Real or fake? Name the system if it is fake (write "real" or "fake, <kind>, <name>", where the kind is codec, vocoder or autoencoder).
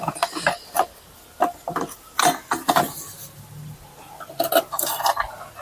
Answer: real